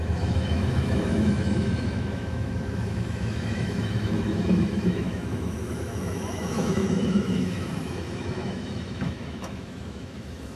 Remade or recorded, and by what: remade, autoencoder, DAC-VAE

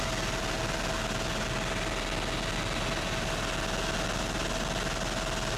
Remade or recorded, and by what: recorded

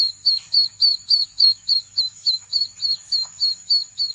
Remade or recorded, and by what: remade, autoencoder, DAC-VAE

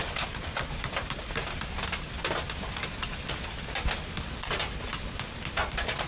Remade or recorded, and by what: recorded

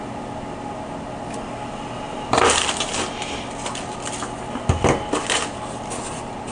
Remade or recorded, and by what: recorded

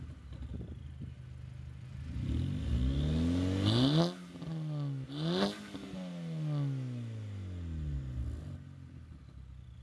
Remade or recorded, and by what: recorded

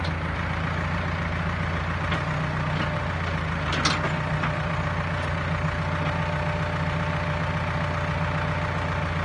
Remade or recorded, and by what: recorded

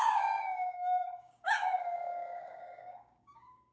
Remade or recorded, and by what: remade, codec, DAC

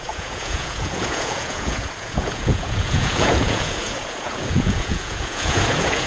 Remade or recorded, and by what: remade, vocoder, Vocos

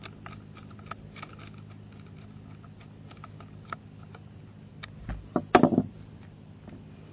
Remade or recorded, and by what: recorded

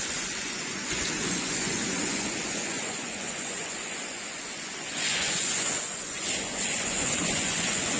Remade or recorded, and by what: remade, vocoder, Vocos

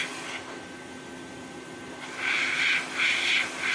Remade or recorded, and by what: recorded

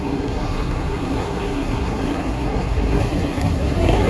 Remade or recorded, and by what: remade, codec, SNAC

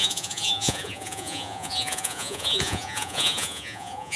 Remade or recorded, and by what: remade, vocoder, Vocos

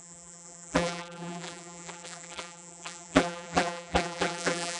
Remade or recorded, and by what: remade, vocoder, BigVGAN v2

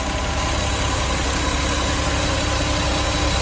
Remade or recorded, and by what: recorded